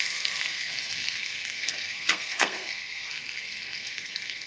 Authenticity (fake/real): fake